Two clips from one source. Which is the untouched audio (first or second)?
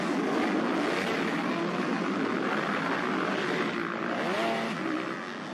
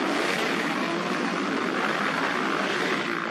first